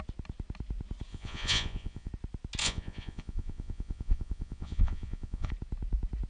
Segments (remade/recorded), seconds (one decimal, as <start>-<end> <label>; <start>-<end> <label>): 0.0-1.1 recorded; 1.1-2.1 remade; 2.1-2.6 recorded; 2.6-5.5 remade; 5.5-6.3 recorded